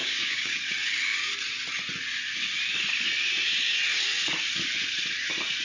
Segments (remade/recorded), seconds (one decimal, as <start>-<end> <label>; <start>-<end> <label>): 0.0-0.6 remade; 0.6-5.6 recorded